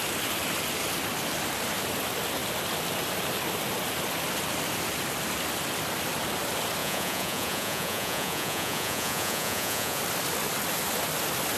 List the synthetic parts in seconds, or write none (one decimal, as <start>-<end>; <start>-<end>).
6.8-10.0